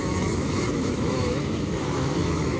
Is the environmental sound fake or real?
fake